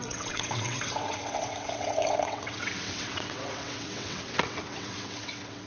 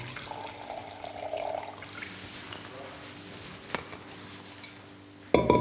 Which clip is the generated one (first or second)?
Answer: first